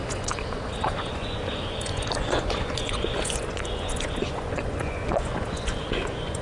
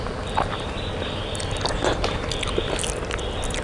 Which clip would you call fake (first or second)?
first